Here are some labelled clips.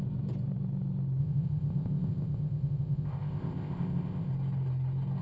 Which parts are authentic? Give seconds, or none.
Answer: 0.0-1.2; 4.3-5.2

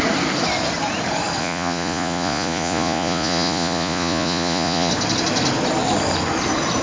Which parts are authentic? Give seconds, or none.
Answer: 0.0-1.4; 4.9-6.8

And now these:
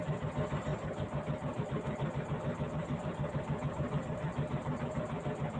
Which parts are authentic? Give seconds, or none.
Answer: 0.0-0.7; 1.6-2.8; 5.0-5.6

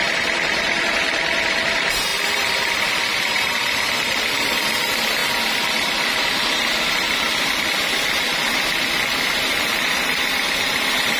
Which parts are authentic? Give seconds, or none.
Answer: 5.2-9.6

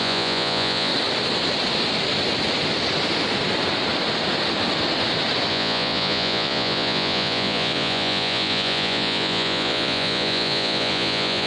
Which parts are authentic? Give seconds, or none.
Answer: 0.9-5.5

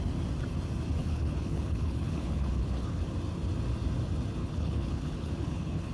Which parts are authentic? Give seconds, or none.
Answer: 0.0-1.0; 3.0-4.4

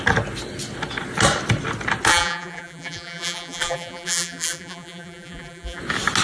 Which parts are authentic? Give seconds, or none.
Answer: 0.0-2.1; 5.8-6.2